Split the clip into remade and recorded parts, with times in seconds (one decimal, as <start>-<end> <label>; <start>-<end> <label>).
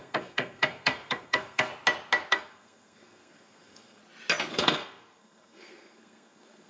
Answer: 0.0-1.7 remade; 1.7-2.3 recorded; 2.3-4.0 remade; 4.0-4.5 recorded; 4.5-6.7 remade